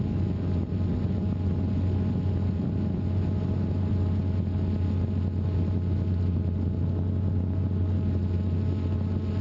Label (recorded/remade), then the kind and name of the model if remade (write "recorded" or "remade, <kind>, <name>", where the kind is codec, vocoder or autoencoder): recorded